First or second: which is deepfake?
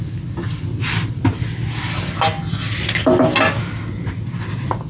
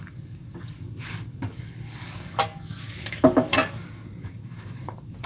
second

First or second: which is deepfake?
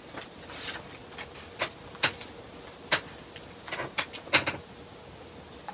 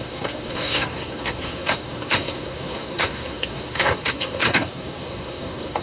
second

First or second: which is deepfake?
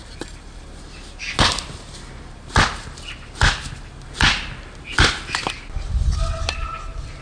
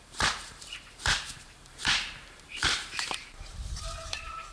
second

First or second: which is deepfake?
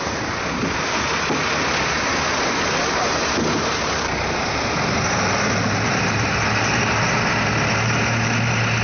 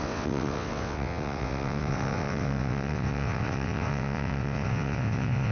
second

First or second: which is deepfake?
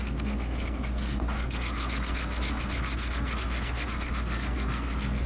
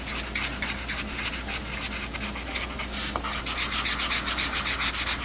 first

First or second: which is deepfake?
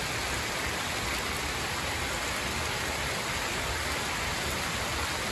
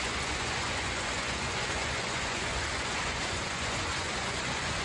second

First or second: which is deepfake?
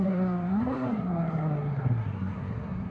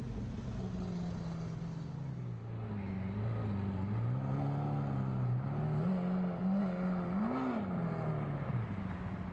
first